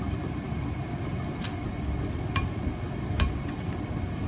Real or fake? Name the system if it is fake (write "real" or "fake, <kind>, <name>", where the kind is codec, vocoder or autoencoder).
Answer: fake, vocoder, BigVGAN v2